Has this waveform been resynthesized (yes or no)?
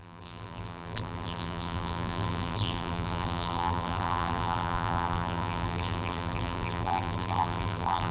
yes